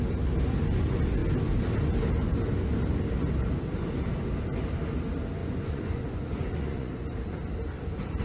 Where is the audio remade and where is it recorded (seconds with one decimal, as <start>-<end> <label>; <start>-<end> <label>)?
0.0-5.4 recorded; 5.4-6.9 remade; 6.9-8.2 recorded